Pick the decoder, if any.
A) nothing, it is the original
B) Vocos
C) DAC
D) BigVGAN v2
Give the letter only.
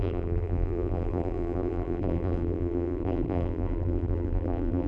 D